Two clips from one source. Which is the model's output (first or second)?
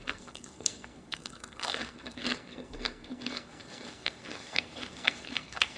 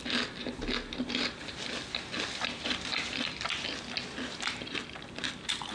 first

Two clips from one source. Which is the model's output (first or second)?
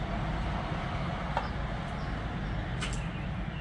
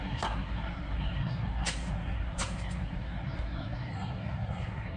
second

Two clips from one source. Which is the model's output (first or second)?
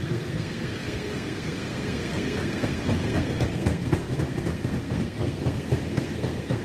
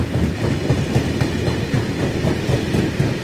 first